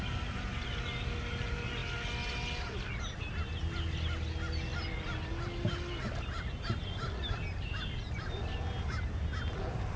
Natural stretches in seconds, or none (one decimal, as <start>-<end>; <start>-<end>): 0.0-10.0

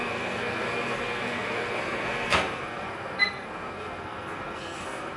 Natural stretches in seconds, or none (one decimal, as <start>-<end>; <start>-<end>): none

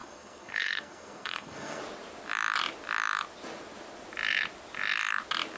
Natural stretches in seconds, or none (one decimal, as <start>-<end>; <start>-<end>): 1.8-5.6

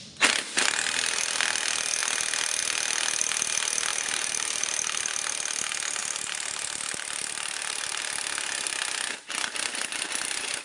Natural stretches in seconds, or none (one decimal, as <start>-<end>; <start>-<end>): 0.0-3.9; 5.0-6.0; 8.0-10.6

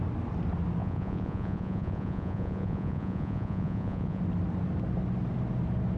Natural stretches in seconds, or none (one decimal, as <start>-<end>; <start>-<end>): 0.0-0.8; 4.2-6.0

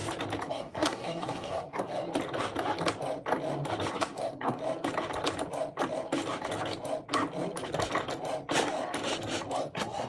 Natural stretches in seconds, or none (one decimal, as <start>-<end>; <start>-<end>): 0.0-0.5; 2.1-3.9; 4.6-9.5